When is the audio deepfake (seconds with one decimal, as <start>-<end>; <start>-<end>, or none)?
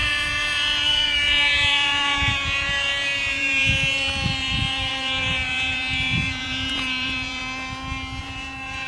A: 0.0-7.4; 8.2-8.9